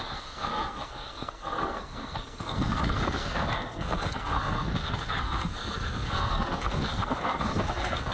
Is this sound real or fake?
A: fake